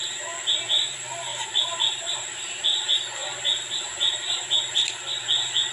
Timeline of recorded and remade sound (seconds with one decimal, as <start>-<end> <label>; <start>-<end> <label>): 0.0-1.3 recorded; 1.3-2.6 remade; 2.6-3.2 recorded; 3.2-4.5 remade; 4.5-5.7 recorded